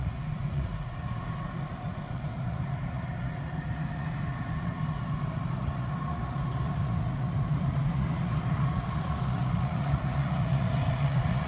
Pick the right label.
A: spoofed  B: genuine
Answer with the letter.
A